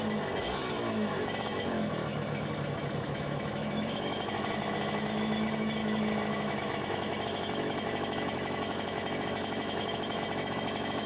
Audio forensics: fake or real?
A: fake